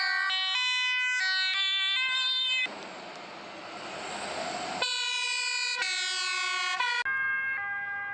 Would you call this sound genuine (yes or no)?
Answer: yes